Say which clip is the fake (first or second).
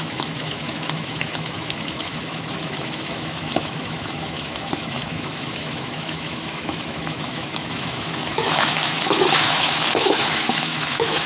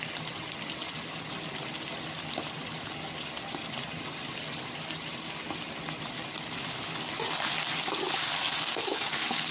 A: first